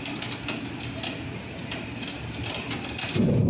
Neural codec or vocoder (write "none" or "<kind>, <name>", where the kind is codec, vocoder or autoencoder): none